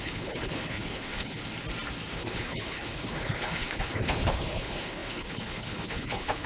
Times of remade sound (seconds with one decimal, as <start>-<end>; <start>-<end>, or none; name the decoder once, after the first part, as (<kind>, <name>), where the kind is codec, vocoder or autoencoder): 0.0-1.4 (codec, HILCodec); 2.1-6.5